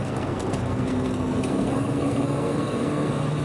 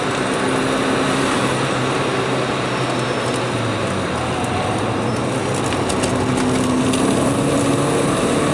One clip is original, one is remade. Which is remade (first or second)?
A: first